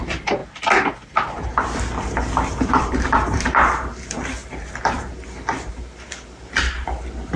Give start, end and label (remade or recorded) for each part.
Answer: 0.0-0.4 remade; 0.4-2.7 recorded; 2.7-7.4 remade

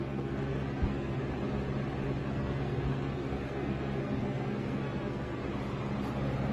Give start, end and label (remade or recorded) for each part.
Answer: 0.0-1.2 remade; 1.2-2.2 recorded; 2.2-5.4 remade; 5.4-6.5 recorded

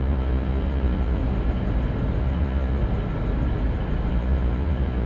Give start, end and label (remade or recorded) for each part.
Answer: 0.0-1.2 remade; 1.2-2.2 recorded; 2.2-2.8 remade; 2.8-4.1 recorded; 4.1-5.1 remade

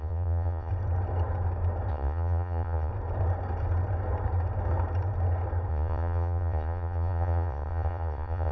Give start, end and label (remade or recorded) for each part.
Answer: 0.0-0.7 remade; 0.7-1.9 recorded; 1.9-2.9 remade; 2.9-5.7 recorded; 5.7-8.5 remade